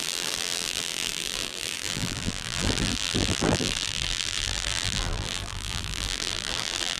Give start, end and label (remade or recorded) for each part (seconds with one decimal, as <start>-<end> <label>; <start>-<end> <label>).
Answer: 0.0-7.0 remade